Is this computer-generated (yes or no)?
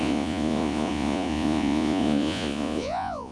yes